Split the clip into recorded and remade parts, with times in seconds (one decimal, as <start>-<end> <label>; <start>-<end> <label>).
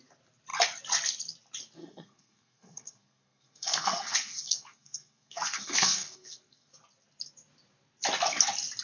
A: 0.0-1.8 recorded; 1.8-6.7 remade; 6.7-8.8 recorded